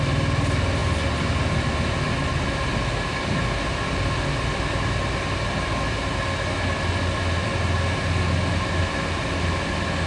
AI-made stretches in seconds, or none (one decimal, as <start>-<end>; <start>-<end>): none